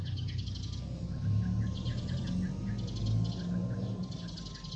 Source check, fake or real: real